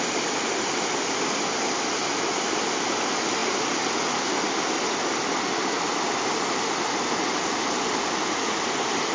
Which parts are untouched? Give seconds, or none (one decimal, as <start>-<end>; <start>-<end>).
0.0-9.1